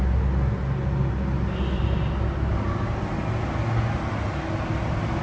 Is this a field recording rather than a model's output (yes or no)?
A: yes